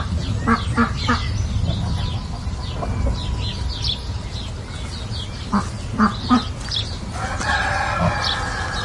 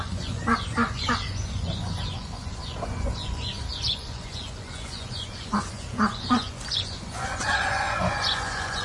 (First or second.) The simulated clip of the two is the second